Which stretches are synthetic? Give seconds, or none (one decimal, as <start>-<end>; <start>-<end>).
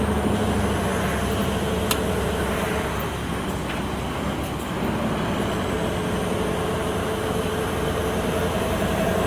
7.0-7.5